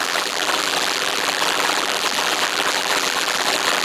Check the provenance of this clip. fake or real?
fake